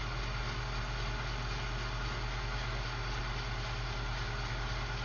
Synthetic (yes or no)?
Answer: no